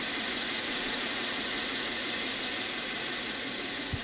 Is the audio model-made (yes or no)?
yes